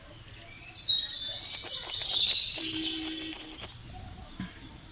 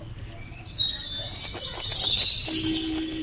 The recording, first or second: second